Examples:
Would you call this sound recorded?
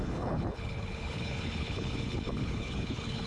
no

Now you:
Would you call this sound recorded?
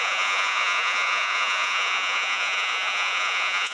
no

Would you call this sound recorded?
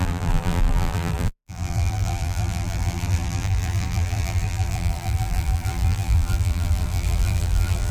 no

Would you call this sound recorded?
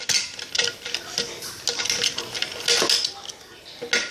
yes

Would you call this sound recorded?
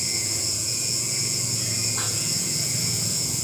no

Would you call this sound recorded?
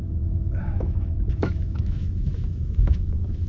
no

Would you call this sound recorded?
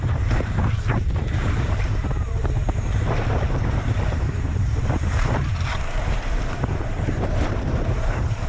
no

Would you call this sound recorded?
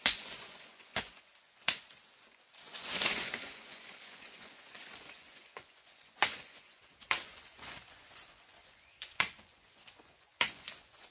no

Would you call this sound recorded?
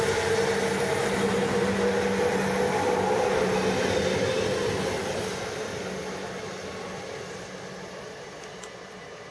yes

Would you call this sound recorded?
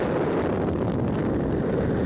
yes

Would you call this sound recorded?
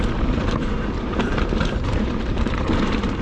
no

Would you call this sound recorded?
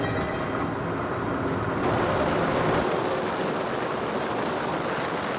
yes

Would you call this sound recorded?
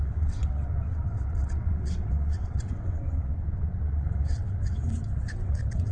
no